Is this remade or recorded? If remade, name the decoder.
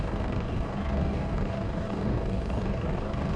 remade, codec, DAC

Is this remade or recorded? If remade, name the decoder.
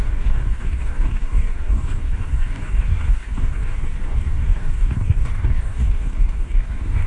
remade, codec, DAC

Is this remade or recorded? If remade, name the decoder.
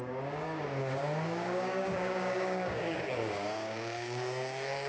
remade, codec, DAC